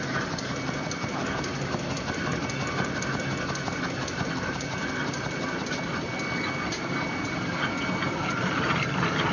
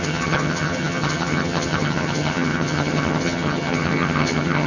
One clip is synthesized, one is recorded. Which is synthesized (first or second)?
second